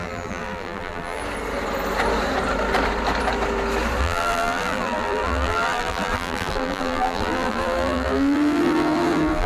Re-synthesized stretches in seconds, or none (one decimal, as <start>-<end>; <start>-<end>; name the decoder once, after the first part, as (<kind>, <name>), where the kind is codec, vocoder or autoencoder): 0.0-1.2 (vocoder, BigVGAN v2); 4.0-9.5